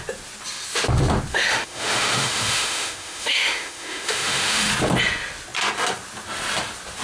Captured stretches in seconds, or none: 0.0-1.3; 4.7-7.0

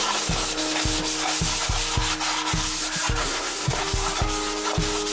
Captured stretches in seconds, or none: 0.0-3.2; 3.8-5.1

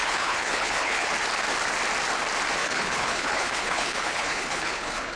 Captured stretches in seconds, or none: 1.1-2.6

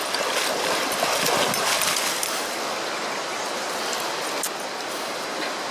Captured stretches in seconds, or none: 0.0-3.3; 3.8-5.7

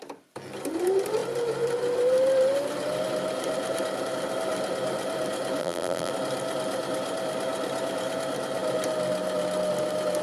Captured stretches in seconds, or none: 0.0-5.6; 6.1-10.2